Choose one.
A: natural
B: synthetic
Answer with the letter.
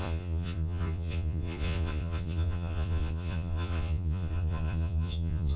B